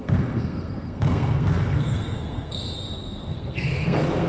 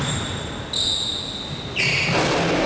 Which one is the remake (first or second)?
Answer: first